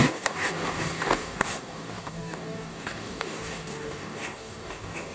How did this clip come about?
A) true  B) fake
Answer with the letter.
B